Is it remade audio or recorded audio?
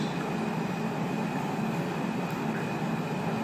recorded